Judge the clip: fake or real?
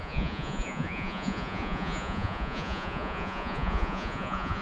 fake